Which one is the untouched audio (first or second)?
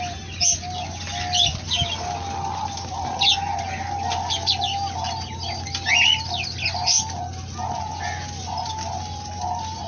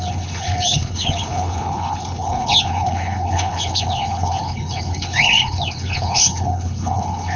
first